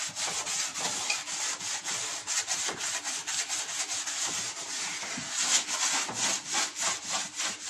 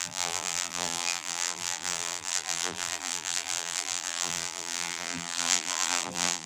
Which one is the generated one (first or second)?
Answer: second